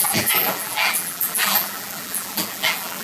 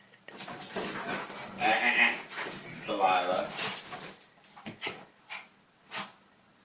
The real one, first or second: second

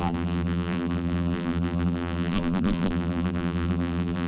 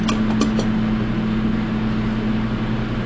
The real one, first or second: second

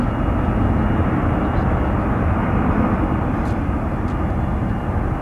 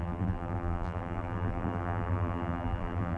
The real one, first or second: first